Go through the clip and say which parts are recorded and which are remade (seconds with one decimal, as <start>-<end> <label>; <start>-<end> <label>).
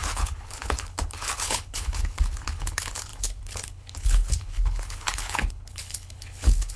0.0-6.8 remade